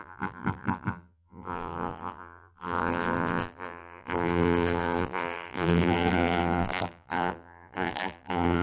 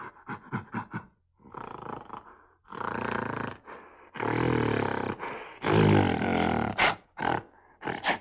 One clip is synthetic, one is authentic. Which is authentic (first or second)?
second